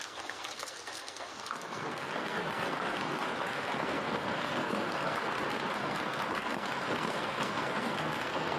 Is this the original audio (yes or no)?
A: no